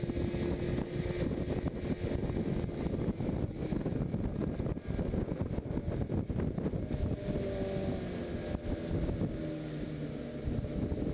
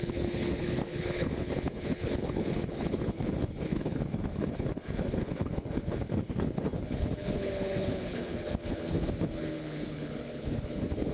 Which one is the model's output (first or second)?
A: second